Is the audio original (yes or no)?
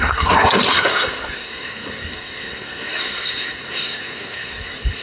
no